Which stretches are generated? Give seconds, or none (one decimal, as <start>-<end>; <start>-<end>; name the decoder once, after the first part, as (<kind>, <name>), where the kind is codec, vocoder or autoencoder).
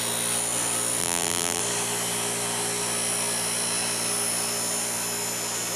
1.0-1.6 (vocoder, BigVGAN v2)